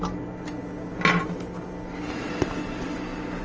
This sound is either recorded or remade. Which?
recorded